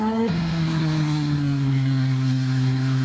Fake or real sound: fake